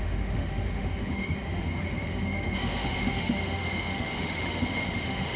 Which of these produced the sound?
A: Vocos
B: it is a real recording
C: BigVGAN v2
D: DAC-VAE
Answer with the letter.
D